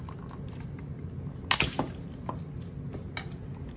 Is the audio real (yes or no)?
yes